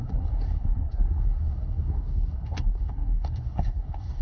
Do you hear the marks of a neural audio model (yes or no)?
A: yes